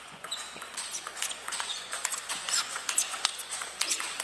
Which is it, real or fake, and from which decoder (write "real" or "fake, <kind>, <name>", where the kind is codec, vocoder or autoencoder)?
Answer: fake, vocoder, Vocos